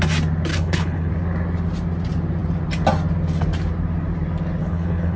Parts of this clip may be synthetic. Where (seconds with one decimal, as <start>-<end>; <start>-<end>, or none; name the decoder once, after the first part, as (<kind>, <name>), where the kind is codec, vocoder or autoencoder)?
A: 0.5-1.1 (codec, HILCodec); 4.6-5.2